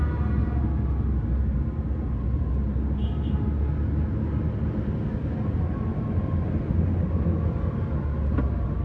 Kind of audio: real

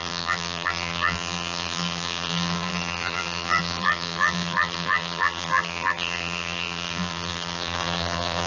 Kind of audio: fake